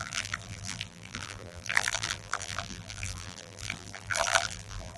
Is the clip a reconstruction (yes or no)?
yes